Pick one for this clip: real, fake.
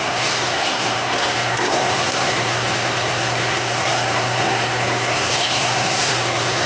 fake